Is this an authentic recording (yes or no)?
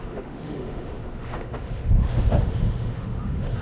no